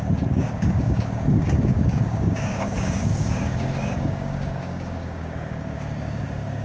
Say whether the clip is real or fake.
fake